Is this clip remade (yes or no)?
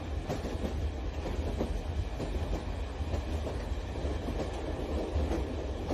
no